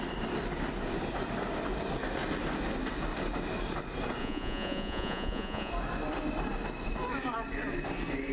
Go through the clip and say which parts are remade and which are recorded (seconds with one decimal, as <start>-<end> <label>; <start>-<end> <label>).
0.0-4.2 recorded; 4.2-5.7 remade; 5.7-8.3 recorded